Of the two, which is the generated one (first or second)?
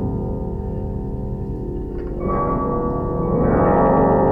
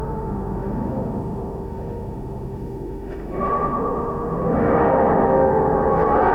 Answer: second